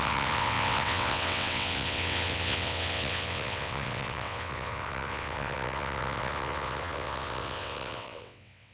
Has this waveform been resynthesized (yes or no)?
yes